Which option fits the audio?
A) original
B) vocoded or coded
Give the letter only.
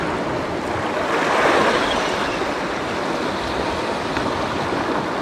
A